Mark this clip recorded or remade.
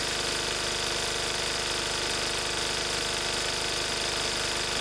recorded